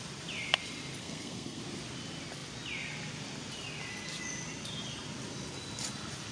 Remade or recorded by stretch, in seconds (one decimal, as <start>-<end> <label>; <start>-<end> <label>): 0.0-1.0 recorded; 1.0-1.6 remade; 1.6-6.3 recorded